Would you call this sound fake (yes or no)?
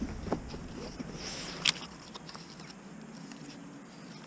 no